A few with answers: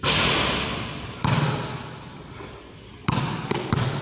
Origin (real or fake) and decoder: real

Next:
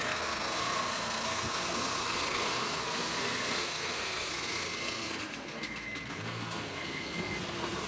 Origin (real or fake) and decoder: fake, codec, SNAC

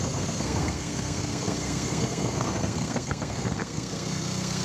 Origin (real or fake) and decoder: fake, codec, SNAC